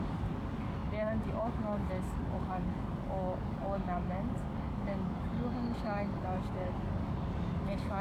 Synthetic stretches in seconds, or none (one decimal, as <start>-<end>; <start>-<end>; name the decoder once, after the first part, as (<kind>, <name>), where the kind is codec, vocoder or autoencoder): 0.0-8.0 (codec, DAC)